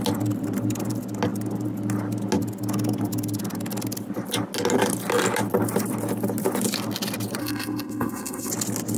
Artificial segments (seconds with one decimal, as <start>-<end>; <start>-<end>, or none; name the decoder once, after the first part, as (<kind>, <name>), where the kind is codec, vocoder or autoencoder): 7.4-8.5 (codec, SNAC)